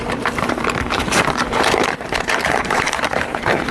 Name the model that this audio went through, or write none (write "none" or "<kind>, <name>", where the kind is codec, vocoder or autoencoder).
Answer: vocoder, BigVGAN v2